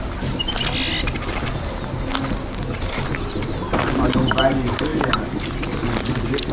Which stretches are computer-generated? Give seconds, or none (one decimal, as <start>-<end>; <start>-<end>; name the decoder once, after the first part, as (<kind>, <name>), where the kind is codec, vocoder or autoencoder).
none